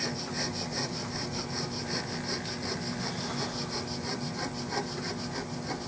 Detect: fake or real real